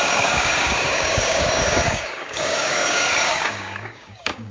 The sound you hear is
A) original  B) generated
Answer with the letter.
B